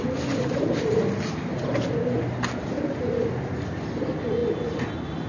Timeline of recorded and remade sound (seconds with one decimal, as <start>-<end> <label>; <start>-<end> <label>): 0.0-5.3 recorded